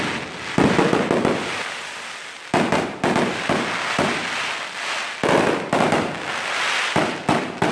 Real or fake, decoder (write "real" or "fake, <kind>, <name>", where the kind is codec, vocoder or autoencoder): real